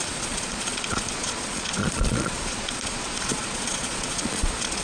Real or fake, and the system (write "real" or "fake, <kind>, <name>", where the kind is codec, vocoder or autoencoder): fake, vocoder, Vocos